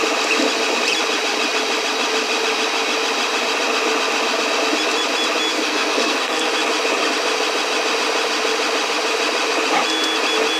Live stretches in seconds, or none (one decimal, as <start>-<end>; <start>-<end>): 0.0-5.5; 6.5-10.6